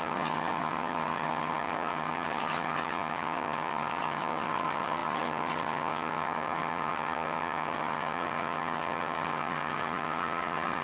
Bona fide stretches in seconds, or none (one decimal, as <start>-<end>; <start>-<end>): none